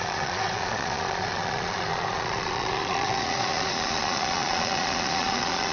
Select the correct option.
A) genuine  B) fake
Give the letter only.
B